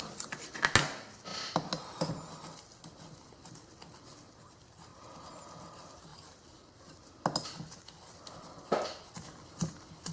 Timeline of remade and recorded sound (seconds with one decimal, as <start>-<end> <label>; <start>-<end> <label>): 0.0-4.9 recorded; 4.9-5.4 remade; 5.4-10.1 recorded